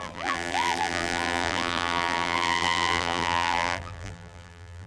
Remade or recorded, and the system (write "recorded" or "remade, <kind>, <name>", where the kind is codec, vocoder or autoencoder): remade, vocoder, BigVGAN v2